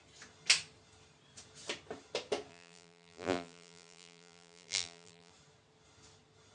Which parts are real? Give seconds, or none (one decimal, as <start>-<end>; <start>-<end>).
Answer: 0.0-2.5; 5.3-6.5